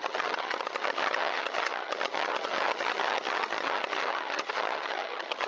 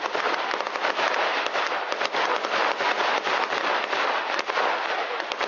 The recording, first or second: second